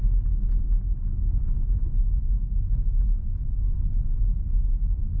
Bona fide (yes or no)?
yes